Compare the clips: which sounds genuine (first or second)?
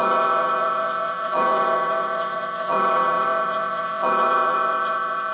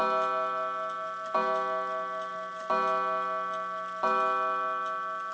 second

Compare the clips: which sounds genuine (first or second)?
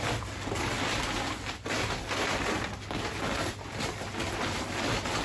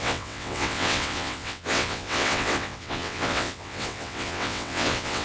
first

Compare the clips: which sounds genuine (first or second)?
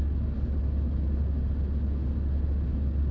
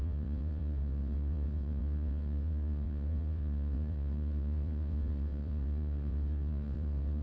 first